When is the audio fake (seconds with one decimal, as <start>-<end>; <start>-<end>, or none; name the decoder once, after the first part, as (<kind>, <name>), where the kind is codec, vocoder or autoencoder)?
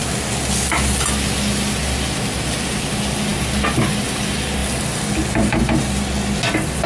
none